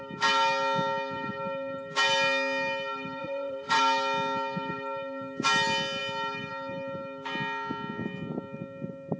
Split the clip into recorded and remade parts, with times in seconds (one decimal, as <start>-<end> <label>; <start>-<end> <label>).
0.0-3.2 recorded; 3.2-3.8 remade; 3.8-9.2 recorded